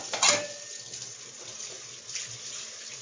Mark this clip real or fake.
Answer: real